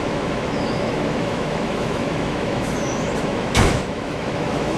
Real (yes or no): no